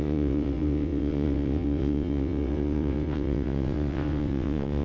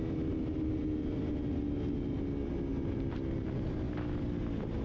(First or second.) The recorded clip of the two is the second